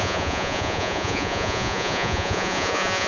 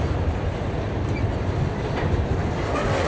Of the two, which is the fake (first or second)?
first